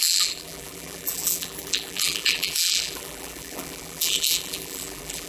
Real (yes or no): no